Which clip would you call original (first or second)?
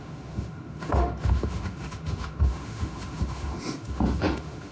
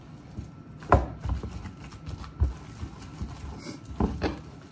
second